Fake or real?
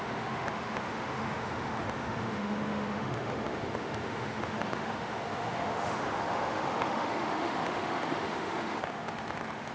fake